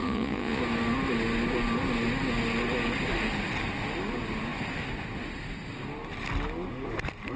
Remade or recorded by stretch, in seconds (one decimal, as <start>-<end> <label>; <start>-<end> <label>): 0.0-0.6 remade; 0.6-7.4 recorded